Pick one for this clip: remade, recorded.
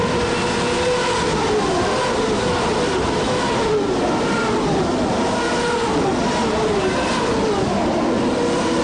recorded